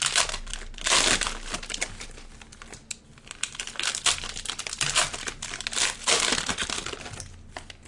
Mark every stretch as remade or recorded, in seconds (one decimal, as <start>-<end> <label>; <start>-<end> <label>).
0.0-7.9 recorded